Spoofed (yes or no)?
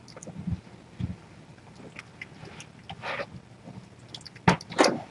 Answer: no